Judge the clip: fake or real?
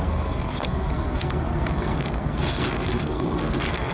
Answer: fake